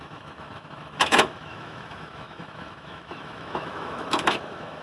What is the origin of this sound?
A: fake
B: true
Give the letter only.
A